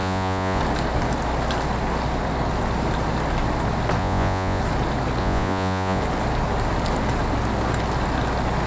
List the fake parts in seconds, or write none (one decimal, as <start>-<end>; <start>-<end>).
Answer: 0.0-0.6; 4.0-4.6; 5.2-6.0